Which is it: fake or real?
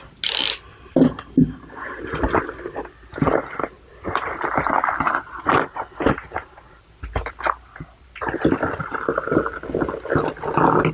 real